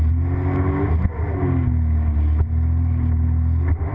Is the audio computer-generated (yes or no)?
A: no